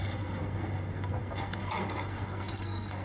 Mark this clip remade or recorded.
remade